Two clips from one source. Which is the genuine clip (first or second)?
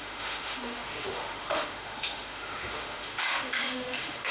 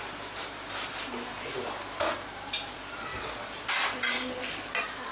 second